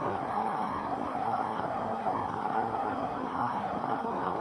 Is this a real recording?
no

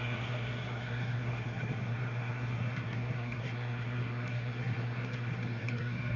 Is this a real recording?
no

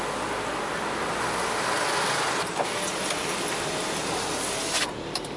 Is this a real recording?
yes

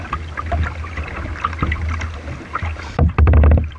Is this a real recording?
yes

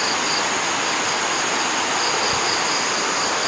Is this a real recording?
yes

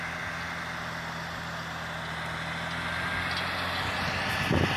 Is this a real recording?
yes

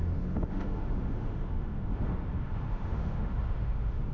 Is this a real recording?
no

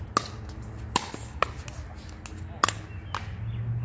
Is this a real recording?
yes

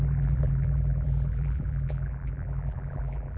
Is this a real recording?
no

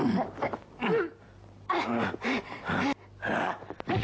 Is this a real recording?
no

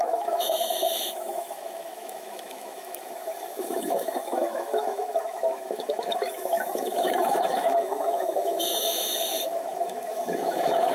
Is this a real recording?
no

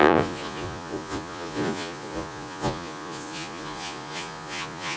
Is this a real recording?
no